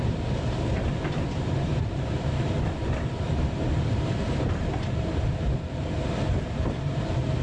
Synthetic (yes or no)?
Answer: yes